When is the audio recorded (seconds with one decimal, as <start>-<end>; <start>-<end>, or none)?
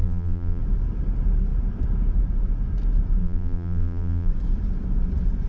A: 0.6-3.2; 4.3-5.5